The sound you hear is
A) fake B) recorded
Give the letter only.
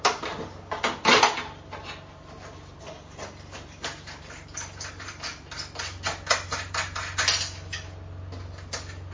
B